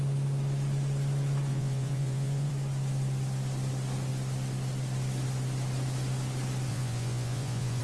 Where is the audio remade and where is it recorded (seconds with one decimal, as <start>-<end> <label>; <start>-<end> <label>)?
0.0-1.5 recorded; 1.5-2.5 remade; 2.5-6.7 recorded; 6.7-7.8 remade